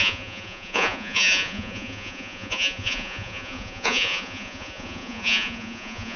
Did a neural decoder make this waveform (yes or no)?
yes